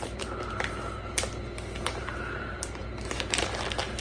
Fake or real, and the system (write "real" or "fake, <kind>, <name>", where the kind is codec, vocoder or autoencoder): real